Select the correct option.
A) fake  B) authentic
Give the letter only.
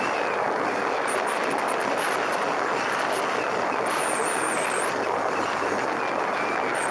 B